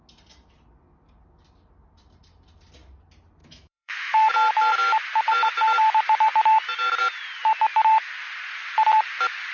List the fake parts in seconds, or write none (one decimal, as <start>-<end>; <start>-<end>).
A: 3.4-4.3